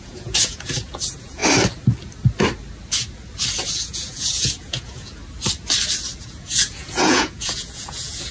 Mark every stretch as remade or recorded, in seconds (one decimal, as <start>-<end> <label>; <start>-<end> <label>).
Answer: 0.0-1.4 remade; 1.4-3.7 recorded; 3.7-5.2 remade; 5.2-6.2 recorded; 6.2-8.3 remade